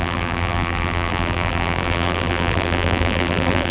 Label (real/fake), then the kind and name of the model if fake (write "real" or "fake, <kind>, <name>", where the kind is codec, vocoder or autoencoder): fake, vocoder, BigVGAN v2